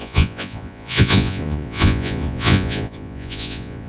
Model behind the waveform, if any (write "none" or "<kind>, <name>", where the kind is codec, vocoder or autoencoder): vocoder, Vocos